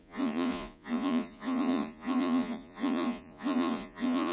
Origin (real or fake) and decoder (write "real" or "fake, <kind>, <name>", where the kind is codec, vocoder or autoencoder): fake, vocoder, Vocos